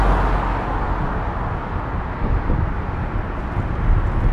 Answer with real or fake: real